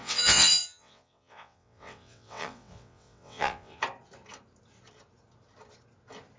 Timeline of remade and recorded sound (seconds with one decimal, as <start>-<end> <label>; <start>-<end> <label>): 0.0-3.8 remade; 3.8-6.4 recorded